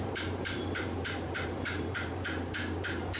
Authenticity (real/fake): fake